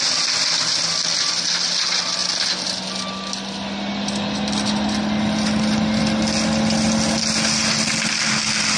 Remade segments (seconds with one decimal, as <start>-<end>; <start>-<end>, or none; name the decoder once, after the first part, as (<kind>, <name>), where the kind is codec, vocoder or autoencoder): none

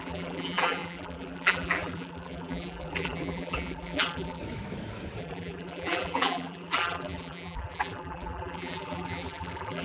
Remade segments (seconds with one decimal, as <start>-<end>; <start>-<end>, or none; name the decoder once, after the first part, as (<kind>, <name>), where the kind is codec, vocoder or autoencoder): 0.0-4.4 (vocoder, BigVGAN v2); 5.2-9.8

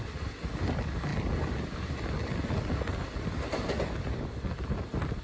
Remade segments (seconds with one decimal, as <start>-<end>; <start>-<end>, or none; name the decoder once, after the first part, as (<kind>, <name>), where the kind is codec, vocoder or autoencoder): none

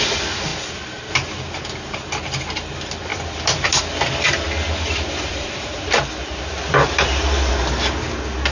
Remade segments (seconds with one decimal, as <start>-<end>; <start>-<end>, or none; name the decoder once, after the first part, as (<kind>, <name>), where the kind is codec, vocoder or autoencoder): 0.5-1.1 (vocoder, BigVGAN v2); 3.1-7.5

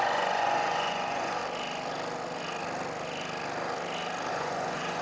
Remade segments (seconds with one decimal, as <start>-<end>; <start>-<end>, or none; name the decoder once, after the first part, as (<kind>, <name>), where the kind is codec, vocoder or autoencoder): 0.0-1.4 (vocoder, Vocos); 4.3-5.0

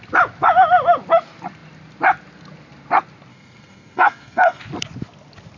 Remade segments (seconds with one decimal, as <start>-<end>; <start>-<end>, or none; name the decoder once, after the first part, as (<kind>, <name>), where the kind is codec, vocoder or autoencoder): 3.3-4.6 (codec, SNAC)